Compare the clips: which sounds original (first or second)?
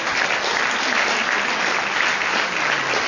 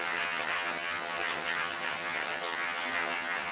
first